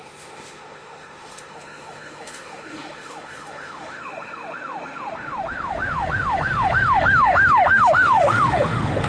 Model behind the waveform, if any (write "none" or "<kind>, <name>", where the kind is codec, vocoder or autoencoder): autoencoder, DAC-VAE